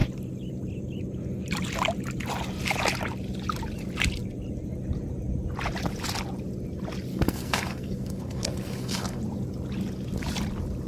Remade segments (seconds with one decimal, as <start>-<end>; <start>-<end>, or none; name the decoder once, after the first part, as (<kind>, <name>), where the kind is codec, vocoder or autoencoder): 7.1-9.2 (codec, SNAC)